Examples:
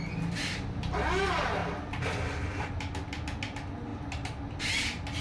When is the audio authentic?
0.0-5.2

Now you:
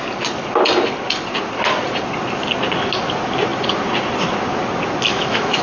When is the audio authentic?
0.0-5.1

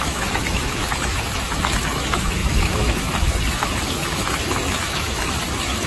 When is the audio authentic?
none

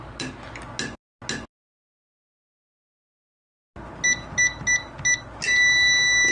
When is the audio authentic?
0.0-6.3

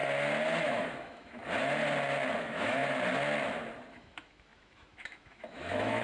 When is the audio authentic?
0.0-0.6; 1.4-2.4; 2.8-3.9

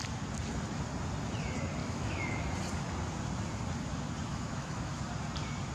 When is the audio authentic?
0.0-1.8; 2.5-4.3; 5.0-5.7

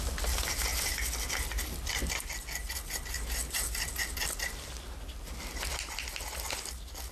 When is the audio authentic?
0.0-7.1

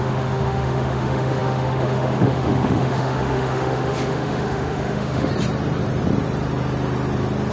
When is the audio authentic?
5.3-7.5